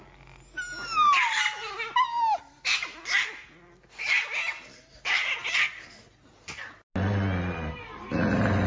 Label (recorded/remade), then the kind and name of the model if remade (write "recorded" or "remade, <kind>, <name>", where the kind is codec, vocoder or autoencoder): recorded